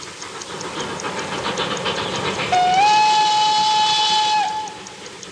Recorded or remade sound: recorded